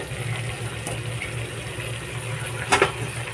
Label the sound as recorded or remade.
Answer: recorded